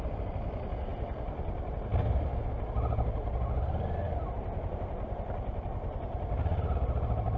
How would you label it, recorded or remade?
recorded